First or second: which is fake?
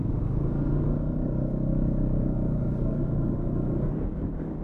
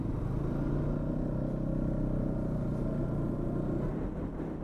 first